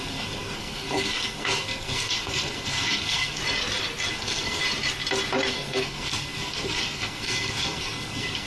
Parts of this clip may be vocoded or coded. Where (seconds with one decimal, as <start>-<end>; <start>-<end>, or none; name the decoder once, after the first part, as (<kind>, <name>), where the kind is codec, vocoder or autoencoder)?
0.0-3.4 (codec, SNAC); 4.1-4.6; 5.5-8.5